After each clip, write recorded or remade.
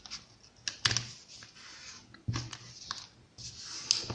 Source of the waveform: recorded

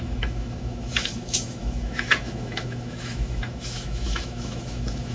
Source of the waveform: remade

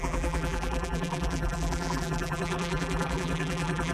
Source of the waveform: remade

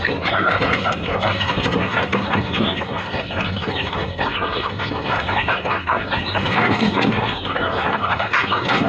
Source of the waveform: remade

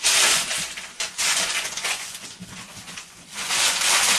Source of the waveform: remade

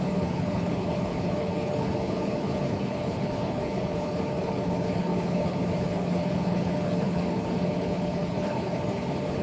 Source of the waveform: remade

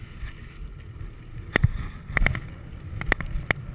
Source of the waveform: recorded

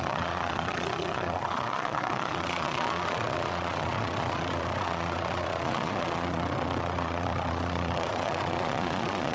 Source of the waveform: remade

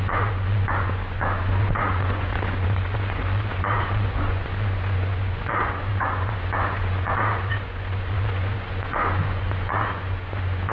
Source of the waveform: remade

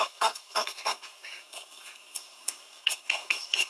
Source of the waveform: remade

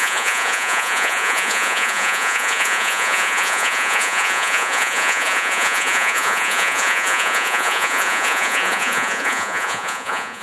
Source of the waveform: remade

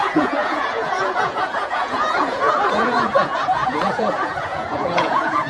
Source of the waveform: remade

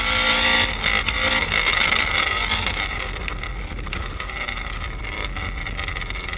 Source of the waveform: recorded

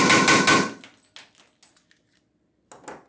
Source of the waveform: recorded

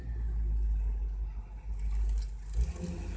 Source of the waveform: recorded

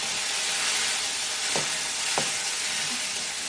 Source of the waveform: recorded